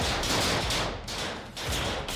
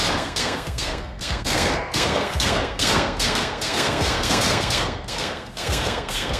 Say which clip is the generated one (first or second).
second